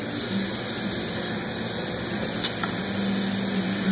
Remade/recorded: recorded